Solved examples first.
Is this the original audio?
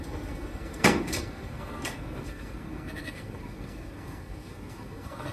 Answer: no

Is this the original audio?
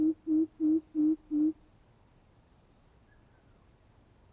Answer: yes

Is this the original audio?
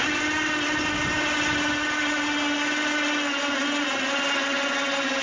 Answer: yes